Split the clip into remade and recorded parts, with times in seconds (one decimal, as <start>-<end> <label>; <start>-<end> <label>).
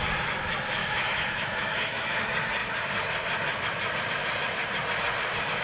0.0-0.8 recorded; 0.8-2.2 remade; 2.2-5.6 recorded